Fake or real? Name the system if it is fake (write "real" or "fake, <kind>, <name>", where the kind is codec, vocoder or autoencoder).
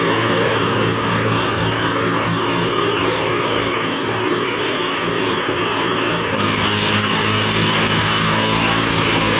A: fake, codec, DAC